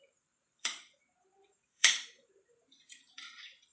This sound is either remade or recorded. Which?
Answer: remade